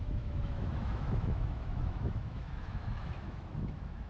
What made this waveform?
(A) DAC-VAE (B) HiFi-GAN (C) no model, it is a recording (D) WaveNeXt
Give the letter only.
A